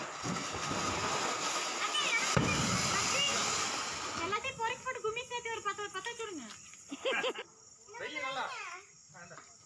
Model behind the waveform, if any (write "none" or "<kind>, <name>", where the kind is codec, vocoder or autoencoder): none